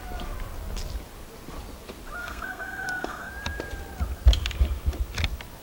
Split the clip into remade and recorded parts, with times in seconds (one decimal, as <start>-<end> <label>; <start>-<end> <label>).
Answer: 0.0-2.2 recorded; 2.2-3.3 remade; 3.3-5.6 recorded